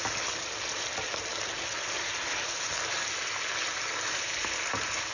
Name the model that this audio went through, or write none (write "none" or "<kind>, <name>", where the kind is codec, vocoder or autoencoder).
none